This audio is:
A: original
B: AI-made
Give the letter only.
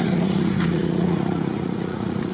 B